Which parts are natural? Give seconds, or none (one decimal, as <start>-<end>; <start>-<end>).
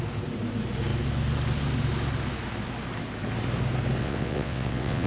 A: 0.0-4.0